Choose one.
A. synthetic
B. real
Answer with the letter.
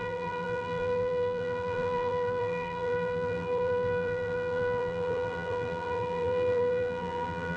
A